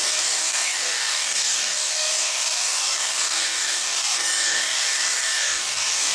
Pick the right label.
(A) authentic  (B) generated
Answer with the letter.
B